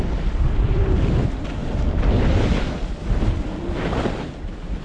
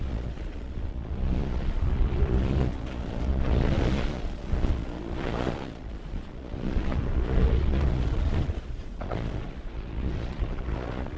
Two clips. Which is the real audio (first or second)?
first